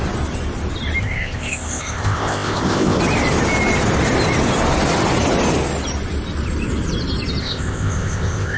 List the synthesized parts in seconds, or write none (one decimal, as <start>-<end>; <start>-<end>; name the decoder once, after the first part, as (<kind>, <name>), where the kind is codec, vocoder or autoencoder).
1.0-3.0 (codec, ZipCodec); 7.4-8.6